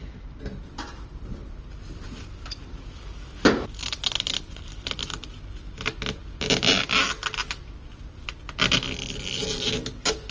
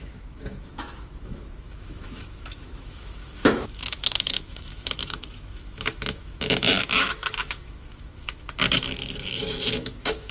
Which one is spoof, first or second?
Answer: second